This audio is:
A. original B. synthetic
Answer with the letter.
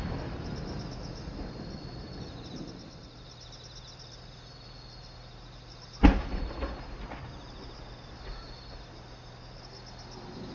A